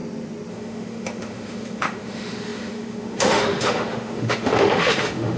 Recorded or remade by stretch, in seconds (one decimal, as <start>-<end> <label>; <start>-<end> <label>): 0.0-0.5 recorded; 0.5-5.4 remade